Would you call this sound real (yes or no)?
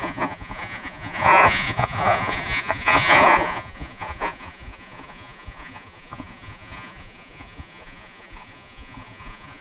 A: no